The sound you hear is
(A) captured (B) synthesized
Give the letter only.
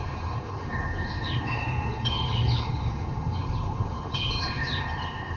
B